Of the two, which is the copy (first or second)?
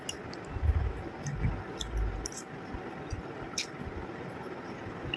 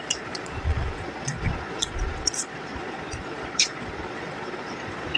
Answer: second